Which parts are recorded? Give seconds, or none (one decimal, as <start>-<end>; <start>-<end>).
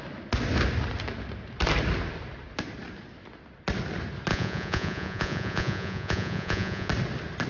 0.0-4.3; 6.9-7.5